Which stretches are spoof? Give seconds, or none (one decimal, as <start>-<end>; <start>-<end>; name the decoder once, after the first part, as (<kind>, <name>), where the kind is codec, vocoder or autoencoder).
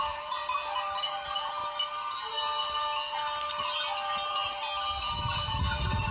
0.0-0.4 (vocoder, Vocos); 1.0-1.6; 4.3-4.7; 5.3-6.1